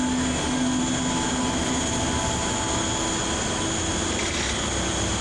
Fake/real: real